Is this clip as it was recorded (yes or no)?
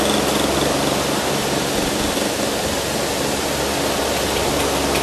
yes